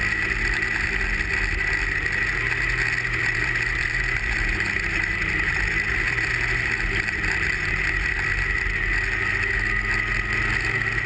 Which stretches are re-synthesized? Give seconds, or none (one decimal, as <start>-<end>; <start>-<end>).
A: 3.2-8.3